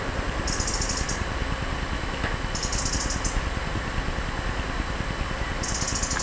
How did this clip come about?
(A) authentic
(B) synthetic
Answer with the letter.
A